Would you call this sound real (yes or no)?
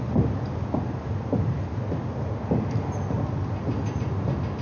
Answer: yes